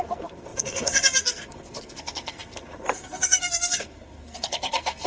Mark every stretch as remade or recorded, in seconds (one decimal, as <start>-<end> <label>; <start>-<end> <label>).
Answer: 0.0-5.1 remade